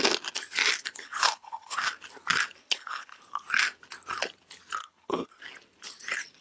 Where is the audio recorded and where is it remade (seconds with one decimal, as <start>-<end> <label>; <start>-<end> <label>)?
0.0-1.0 recorded; 1.0-1.8 remade; 1.8-2.6 recorded; 2.6-3.2 remade; 3.2-4.8 recorded; 4.8-5.4 remade; 5.4-6.4 recorded